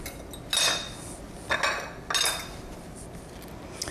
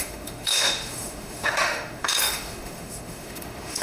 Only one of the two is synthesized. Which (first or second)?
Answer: second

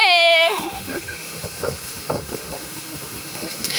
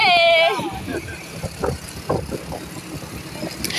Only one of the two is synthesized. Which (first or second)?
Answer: first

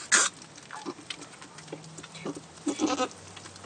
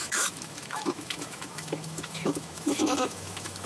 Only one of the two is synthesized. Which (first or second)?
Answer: second